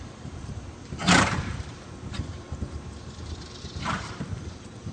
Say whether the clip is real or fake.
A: fake